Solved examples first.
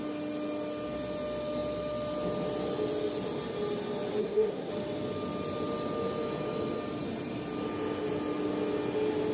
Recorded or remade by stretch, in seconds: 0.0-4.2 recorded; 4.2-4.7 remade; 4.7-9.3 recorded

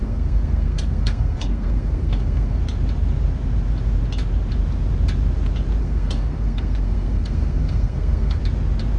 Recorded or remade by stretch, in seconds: 0.0-2.6 remade; 2.6-5.8 recorded; 5.8-8.4 remade; 8.4-9.0 recorded